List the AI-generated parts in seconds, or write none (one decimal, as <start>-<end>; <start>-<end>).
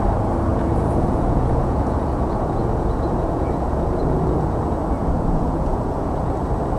0.5-4.6; 5.0-6.3